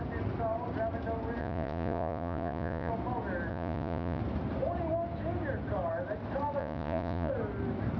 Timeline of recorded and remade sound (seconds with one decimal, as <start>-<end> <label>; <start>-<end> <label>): 0.0-1.4 recorded; 1.4-2.9 remade; 2.9-3.5 recorded; 3.5-4.2 remade; 4.2-6.6 recorded; 6.6-7.3 remade; 7.3-8.0 recorded